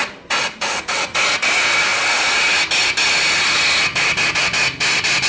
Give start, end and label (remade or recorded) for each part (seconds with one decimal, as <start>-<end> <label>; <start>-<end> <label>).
0.0-5.3 recorded